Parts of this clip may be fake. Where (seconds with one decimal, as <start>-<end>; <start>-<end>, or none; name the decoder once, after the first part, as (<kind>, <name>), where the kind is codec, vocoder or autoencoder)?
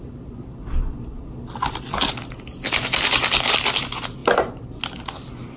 none